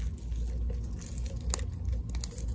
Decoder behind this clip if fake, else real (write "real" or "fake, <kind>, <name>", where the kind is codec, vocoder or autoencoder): real